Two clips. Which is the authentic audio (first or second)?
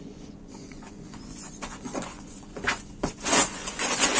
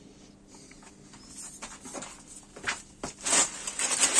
second